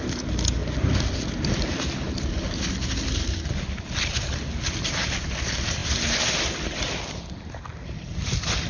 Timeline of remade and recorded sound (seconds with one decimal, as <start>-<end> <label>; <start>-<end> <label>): 0.0-0.6 remade; 0.6-4.1 recorded; 4.1-8.7 remade